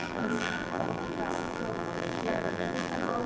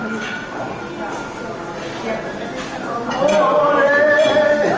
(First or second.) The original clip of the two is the second